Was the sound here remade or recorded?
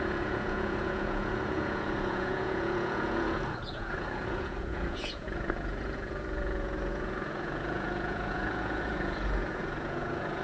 remade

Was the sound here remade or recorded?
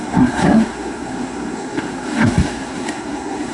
remade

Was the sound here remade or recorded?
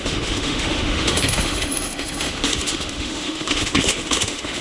remade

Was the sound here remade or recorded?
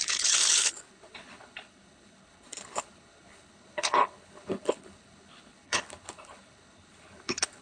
remade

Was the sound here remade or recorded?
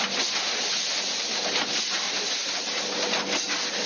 recorded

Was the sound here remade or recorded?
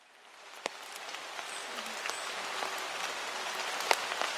recorded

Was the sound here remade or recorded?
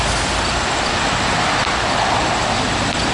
recorded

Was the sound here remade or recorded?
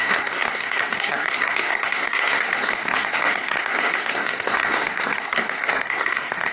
remade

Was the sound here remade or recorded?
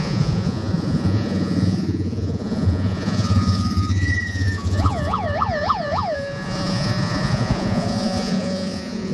remade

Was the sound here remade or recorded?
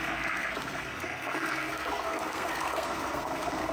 remade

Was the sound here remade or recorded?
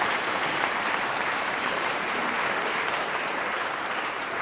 remade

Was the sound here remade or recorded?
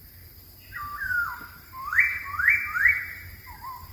remade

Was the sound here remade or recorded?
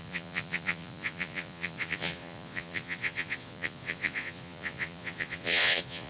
remade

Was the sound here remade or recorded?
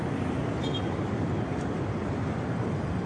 remade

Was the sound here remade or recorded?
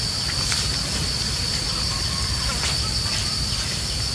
recorded